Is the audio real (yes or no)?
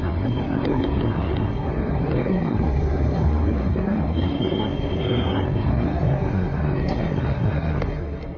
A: no